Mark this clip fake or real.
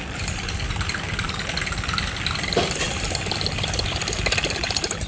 fake